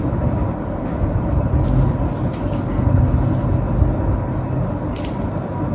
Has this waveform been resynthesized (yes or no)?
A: no